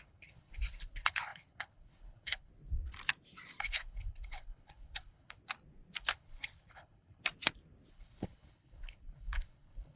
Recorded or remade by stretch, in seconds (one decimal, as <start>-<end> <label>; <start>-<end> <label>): 0.0-2.5 remade; 2.5-3.6 recorded; 3.6-5.4 remade; 5.4-6.0 recorded; 6.0-7.2 remade; 7.2-7.9 recorded; 7.9-10.0 remade